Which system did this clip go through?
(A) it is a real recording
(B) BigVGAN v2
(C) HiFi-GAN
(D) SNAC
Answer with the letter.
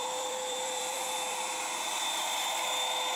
B